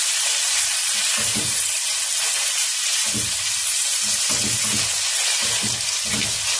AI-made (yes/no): no